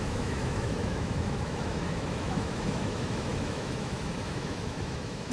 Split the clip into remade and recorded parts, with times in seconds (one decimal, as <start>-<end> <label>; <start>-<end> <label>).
0.0-5.3 remade